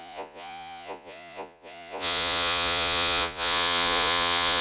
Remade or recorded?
remade